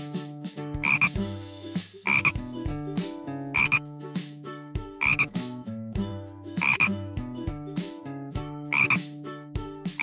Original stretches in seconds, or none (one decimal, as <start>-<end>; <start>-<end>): 2.7-3.6